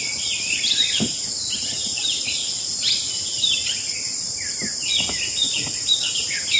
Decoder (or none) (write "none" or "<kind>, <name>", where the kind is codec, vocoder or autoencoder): vocoder, BigVGAN v2